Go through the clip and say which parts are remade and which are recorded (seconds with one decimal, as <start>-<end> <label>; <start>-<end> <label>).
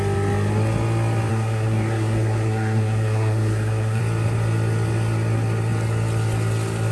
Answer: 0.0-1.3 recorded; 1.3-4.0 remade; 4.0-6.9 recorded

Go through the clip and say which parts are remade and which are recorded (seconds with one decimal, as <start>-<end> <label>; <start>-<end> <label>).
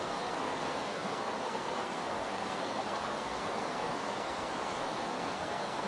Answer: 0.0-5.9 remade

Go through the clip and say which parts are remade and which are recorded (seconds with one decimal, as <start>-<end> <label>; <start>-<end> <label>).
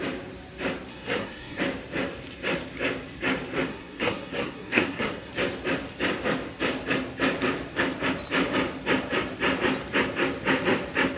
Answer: 0.0-0.9 recorded; 0.9-1.6 remade; 1.6-3.7 recorded; 3.7-5.3 remade; 5.3-11.2 recorded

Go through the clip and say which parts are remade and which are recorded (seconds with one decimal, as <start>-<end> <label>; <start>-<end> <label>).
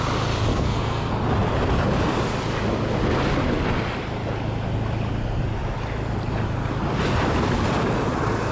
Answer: 0.0-0.5 recorded; 0.5-1.1 remade; 1.1-8.5 recorded